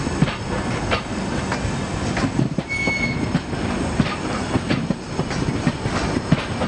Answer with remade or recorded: recorded